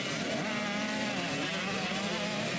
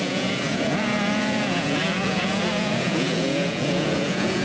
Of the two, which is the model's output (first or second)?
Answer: second